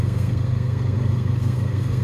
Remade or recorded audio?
remade